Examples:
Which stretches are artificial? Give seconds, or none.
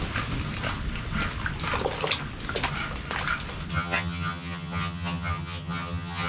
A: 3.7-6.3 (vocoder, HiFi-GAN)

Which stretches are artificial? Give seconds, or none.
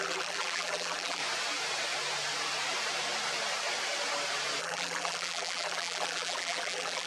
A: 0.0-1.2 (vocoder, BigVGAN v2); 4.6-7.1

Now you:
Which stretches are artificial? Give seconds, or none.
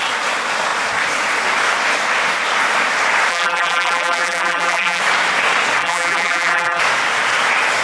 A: 3.3-5.0 (vocoder, BigVGAN v2); 5.8-6.8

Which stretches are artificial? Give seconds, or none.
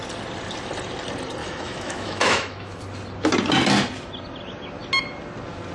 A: 1.4-2.8 (autoencoder, DAC-VAE)